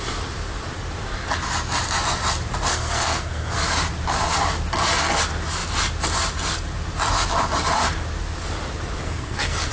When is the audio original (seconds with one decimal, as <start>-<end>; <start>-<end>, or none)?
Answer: 0.0-2.7; 3.7-9.0

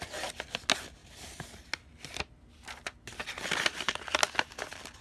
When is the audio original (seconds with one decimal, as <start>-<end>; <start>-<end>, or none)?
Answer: 0.0-5.0

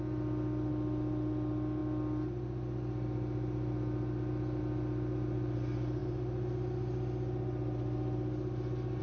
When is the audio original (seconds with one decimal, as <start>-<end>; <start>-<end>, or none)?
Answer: 0.0-9.0

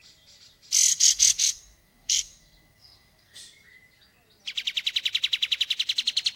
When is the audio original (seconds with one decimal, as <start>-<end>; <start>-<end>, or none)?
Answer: 0.0-0.9; 3.4-6.4